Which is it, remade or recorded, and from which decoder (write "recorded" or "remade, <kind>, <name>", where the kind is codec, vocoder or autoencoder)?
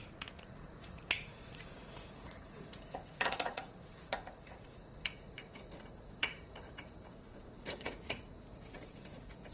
remade, vocoder, Vocos